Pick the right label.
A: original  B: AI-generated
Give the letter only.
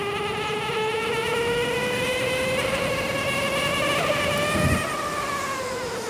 A